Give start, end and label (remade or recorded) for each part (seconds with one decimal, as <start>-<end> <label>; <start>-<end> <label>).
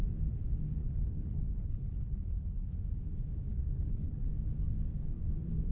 0.0-0.8 recorded; 0.8-2.7 remade; 2.7-3.5 recorded; 3.5-4.2 remade; 4.2-5.7 recorded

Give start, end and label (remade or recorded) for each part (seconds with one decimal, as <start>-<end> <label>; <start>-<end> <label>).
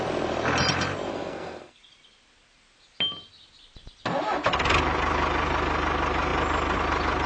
0.0-1.1 recorded; 1.1-1.8 remade; 1.8-7.3 recorded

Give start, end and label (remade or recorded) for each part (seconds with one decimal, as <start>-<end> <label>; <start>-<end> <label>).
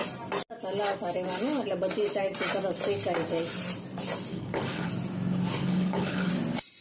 0.0-4.3 recorded; 4.3-4.9 remade; 4.9-5.6 recorded; 5.6-6.3 remade; 6.3-6.8 recorded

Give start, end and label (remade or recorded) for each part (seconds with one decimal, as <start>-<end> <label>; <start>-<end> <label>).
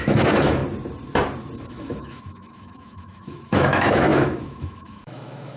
0.0-0.6 remade; 0.6-1.7 recorded; 1.7-5.6 remade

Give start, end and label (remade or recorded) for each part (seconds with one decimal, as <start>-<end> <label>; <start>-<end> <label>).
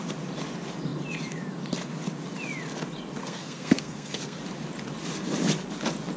0.0-3.2 recorded; 3.2-4.4 remade; 4.4-6.2 recorded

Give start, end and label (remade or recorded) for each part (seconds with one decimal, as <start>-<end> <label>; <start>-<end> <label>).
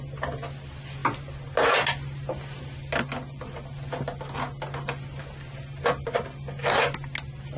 0.0-7.6 recorded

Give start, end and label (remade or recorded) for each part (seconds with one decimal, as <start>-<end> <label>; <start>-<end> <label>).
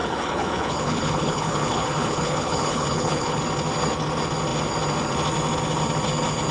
0.0-3.4 remade; 3.4-6.5 recorded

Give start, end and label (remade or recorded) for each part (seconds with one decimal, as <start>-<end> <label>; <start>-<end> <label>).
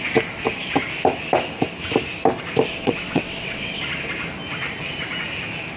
0.0-2.7 recorded; 2.7-3.8 remade; 3.8-5.8 recorded